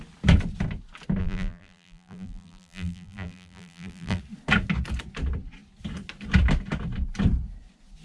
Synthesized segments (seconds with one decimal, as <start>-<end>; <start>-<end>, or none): 1.2-4.2